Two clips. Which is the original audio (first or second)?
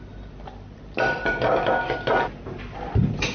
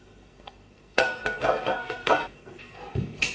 first